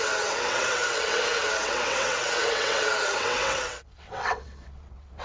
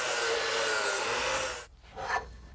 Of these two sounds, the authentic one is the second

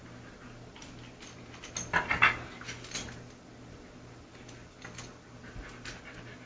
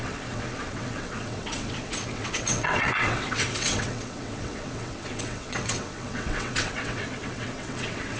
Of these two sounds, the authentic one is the first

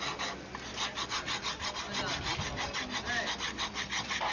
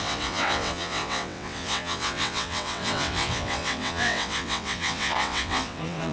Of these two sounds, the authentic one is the first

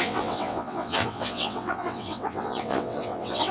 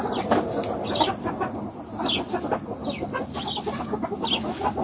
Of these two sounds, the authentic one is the second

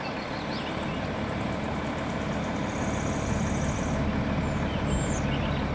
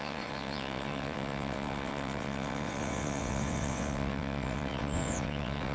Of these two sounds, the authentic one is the first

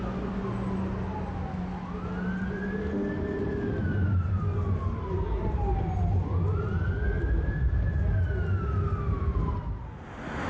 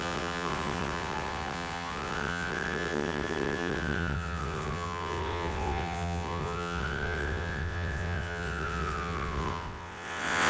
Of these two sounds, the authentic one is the first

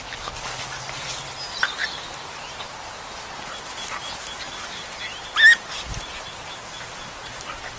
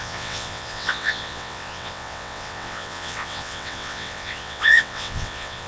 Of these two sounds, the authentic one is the first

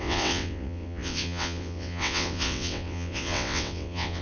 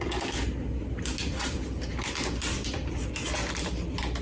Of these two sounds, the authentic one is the second